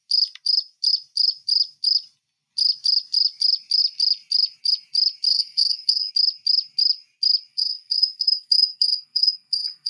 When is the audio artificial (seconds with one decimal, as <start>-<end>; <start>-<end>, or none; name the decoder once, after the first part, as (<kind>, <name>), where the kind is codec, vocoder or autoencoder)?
5.3-6.1 (codec, SNAC); 7.5-9.9